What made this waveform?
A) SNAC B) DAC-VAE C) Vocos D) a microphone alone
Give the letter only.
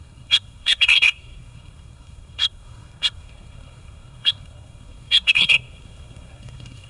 A